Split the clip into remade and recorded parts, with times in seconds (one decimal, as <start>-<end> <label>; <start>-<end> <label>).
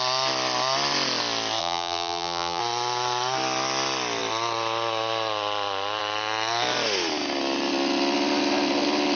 0.0-1.6 recorded; 1.6-2.6 remade; 2.6-9.2 recorded